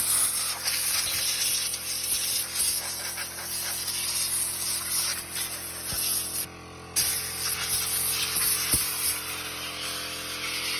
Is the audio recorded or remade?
recorded